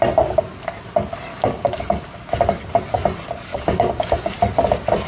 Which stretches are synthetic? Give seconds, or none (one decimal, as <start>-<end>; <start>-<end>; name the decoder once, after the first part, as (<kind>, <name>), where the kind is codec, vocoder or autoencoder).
1.3-2.0 (codec, DAC); 3.5-4.3